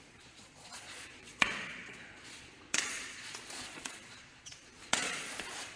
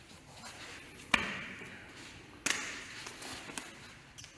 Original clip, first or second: second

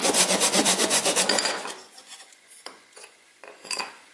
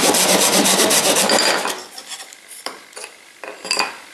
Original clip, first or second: second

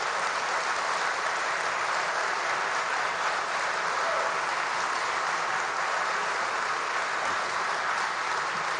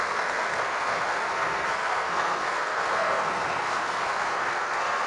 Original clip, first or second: first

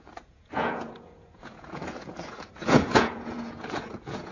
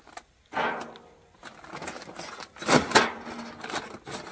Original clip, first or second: second